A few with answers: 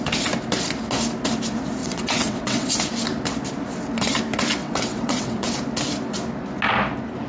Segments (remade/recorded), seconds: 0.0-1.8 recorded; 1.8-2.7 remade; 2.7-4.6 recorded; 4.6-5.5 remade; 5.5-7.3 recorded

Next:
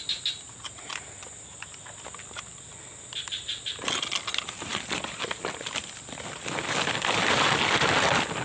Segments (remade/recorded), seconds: 0.0-8.4 recorded

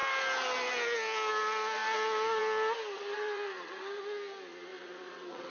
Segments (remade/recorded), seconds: 0.0-3.1 recorded; 3.1-4.0 remade; 4.0-4.7 recorded; 4.7-5.5 remade